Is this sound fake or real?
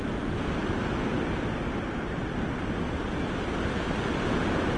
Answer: real